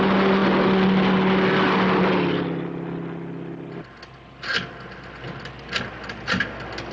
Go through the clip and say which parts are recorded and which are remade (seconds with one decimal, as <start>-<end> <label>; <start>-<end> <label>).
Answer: 0.0-6.9 recorded